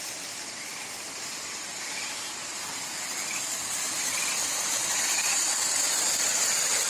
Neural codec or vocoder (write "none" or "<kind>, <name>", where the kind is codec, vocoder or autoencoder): vocoder, BigVGAN v2